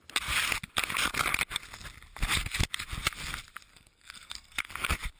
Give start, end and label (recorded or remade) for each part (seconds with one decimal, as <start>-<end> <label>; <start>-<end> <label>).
0.0-3.7 recorded; 3.7-4.7 remade; 4.7-5.2 recorded